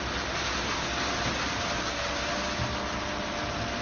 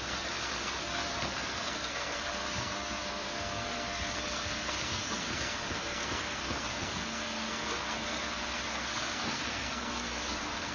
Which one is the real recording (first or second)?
first